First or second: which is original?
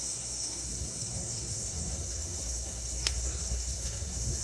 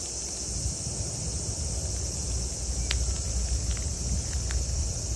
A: second